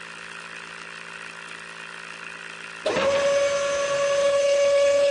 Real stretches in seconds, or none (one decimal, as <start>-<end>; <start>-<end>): 0.0-4.2